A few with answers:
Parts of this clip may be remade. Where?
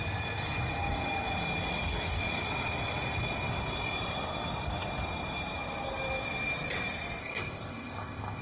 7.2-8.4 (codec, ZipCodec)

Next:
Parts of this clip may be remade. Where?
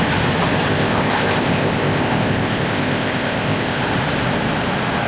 0.7-3.8 (codec, ZipCodec)